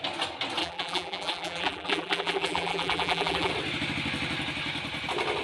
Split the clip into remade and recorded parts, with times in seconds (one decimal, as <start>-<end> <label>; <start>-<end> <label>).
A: 0.0-0.6 recorded; 0.6-3.5 remade; 3.5-5.4 recorded